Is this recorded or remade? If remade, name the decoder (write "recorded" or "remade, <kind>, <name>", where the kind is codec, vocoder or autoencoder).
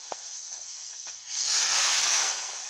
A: remade, codec, SNAC